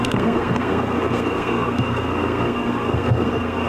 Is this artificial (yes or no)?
yes